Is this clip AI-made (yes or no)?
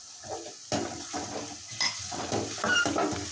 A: no